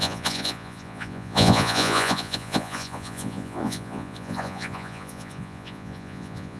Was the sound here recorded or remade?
remade